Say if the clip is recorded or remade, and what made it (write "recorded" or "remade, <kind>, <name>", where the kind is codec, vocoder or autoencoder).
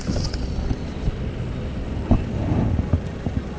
recorded